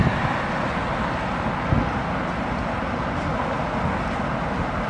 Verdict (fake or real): real